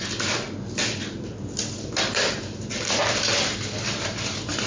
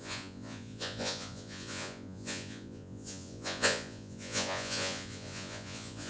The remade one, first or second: second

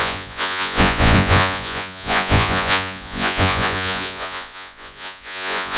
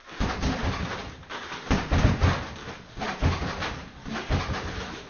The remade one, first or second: first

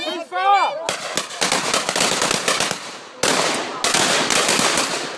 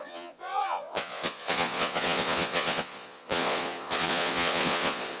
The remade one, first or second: second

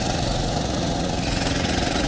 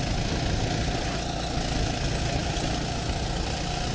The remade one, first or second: first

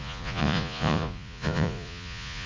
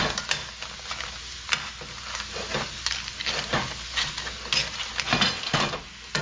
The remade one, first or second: first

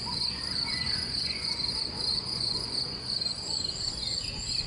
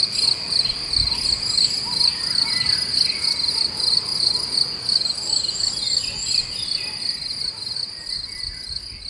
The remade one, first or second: first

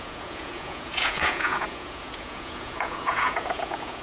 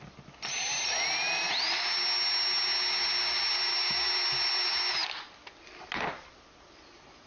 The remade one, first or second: first